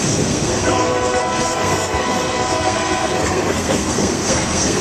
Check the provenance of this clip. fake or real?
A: fake